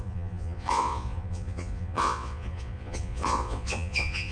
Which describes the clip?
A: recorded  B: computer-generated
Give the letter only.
B